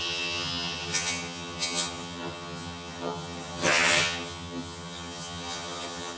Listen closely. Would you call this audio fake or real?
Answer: fake